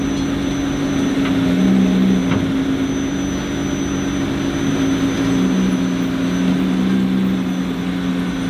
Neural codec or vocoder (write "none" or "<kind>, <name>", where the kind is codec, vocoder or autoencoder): none